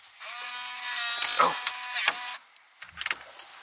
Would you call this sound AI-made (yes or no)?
no